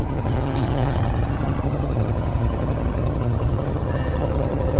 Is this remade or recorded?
remade